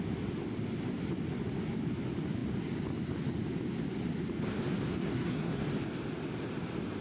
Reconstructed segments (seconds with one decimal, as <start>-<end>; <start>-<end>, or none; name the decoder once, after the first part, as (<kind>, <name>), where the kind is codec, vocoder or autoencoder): 5.0-5.6 (codec, SNAC)